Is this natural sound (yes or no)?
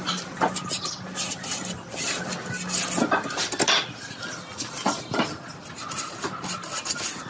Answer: yes